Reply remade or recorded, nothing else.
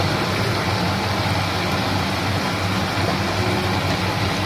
recorded